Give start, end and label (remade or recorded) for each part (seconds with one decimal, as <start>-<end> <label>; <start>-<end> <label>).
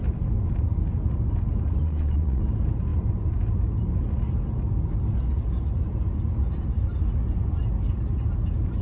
0.0-1.8 recorded; 1.8-2.4 remade; 2.4-8.8 recorded